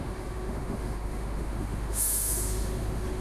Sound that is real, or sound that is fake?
fake